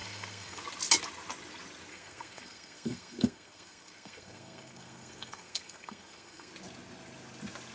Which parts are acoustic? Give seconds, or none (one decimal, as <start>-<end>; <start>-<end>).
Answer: 0.6-1.9; 6.5-7.7